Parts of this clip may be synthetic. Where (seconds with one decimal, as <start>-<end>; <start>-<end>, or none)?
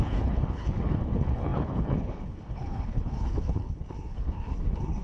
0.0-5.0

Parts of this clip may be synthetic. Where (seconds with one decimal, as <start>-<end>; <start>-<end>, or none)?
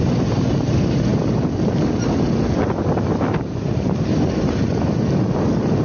none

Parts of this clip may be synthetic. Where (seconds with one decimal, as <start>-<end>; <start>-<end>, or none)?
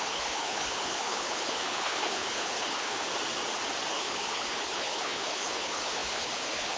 0.0-3.1; 3.9-6.8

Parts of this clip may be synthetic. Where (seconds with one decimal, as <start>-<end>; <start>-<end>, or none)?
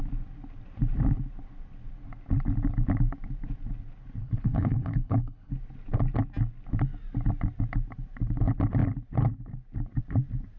4.2-5.5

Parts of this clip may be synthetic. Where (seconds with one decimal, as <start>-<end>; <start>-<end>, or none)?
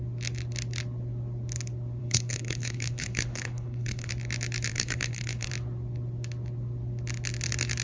2.0-4.1; 4.7-5.5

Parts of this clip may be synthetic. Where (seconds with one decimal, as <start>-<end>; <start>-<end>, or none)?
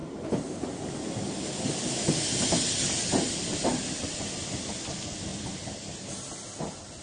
none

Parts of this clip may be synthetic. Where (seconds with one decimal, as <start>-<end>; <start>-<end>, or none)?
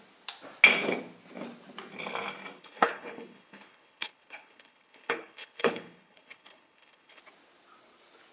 2.6-7.2